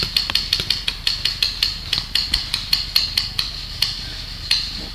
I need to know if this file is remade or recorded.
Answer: recorded